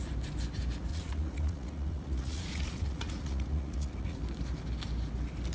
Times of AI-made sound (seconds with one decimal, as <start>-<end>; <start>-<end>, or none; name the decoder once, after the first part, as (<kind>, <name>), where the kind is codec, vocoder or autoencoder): 0.9-4.2 (vocoder, Vocos)